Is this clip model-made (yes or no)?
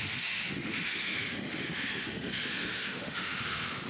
yes